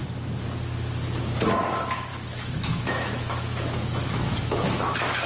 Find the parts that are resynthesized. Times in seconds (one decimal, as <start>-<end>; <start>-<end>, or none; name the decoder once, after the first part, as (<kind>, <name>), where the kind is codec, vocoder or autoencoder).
2.1-5.3 (autoencoder, DAC-VAE)